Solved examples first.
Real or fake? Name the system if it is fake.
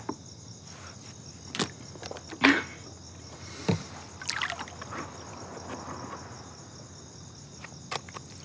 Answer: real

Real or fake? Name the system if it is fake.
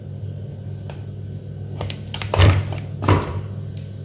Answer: real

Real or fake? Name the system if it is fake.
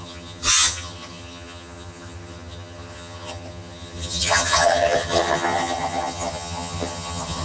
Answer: fake, vocoder, HiFi-GAN